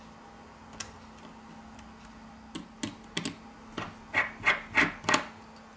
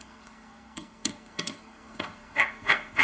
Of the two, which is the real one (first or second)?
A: first